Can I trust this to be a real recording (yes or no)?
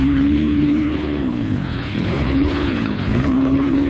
no